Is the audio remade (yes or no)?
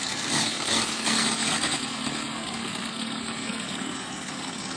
yes